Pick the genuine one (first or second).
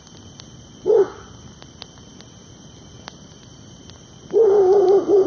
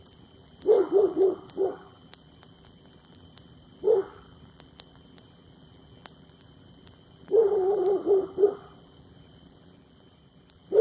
first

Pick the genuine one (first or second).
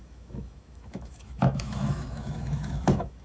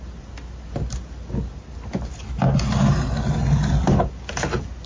second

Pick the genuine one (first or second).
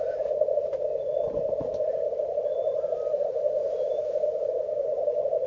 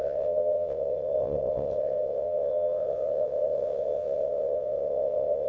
first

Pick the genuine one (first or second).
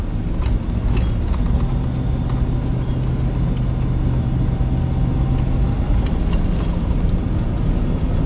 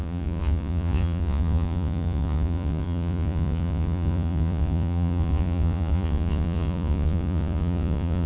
first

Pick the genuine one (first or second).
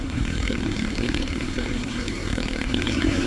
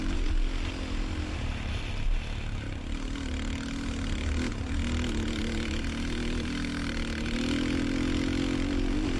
second